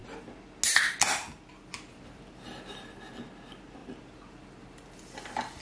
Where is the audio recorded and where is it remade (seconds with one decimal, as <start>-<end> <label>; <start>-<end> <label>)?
0.0-5.6 recorded